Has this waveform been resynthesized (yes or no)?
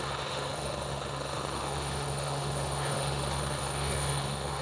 yes